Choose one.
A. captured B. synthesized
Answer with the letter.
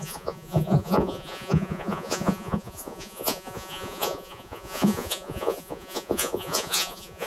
B